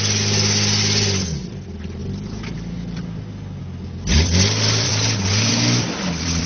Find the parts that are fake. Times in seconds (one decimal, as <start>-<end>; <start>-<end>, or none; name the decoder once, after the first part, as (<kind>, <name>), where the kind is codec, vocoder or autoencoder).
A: 0.0-4.9 (vocoder, BigVGAN v2); 5.5-6.5